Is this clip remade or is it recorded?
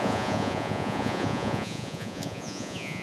remade